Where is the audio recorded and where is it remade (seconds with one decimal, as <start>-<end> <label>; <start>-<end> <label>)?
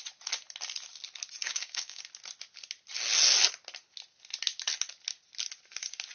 0.0-1.4 recorded; 1.4-2.0 remade; 2.0-6.1 recorded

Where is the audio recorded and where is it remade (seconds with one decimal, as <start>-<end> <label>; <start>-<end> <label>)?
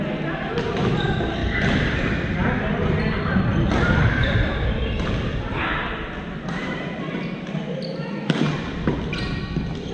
0.0-1.4 recorded; 1.4-5.6 remade; 5.6-9.9 recorded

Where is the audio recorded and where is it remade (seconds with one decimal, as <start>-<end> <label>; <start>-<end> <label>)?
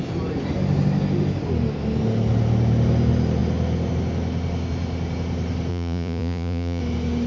0.0-5.7 recorded; 5.7-6.8 remade; 6.8-7.3 recorded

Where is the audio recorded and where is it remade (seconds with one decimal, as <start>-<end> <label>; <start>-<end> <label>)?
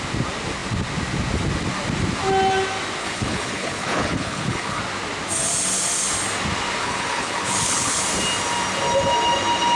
0.0-3.0 recorded; 3.0-4.8 remade; 4.8-6.8 recorded; 6.8-8.0 remade; 8.0-9.8 recorded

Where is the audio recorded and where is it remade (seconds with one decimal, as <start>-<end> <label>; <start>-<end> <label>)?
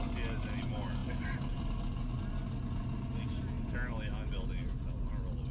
0.0-5.5 recorded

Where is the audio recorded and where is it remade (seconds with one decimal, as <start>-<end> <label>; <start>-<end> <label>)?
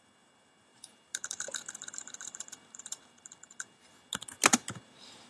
0.0-0.7 recorded; 0.7-3.9 remade; 3.9-5.3 recorded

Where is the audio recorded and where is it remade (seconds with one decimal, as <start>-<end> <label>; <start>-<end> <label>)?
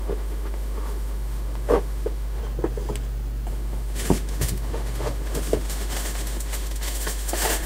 0.0-2.4 remade; 2.4-3.5 recorded; 3.5-7.7 remade